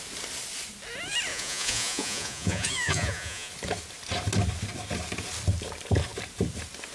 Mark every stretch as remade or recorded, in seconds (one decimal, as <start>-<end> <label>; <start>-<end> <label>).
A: 0.0-1.3 recorded; 1.3-3.5 remade; 3.5-6.9 recorded